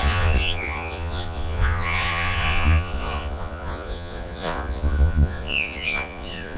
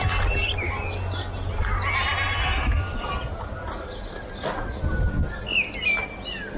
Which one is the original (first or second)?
second